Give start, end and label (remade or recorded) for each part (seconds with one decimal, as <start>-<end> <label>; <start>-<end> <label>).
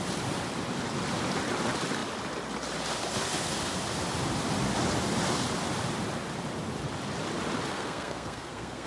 0.0-7.7 recorded; 7.7-8.9 remade